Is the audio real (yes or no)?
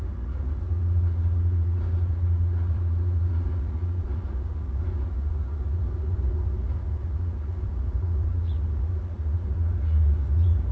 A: no